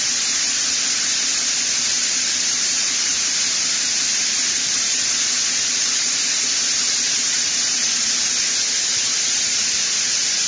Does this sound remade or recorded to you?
recorded